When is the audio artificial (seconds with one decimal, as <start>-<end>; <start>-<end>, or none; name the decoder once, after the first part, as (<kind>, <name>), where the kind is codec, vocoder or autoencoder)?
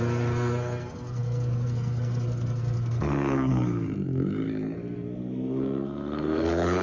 0.0-6.8 (codec, SNAC)